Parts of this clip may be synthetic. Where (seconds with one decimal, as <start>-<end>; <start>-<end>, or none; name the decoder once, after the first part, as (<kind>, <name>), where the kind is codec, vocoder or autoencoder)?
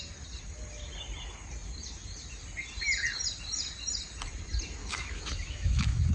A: 4.8-6.1 (autoencoder, DAC-VAE)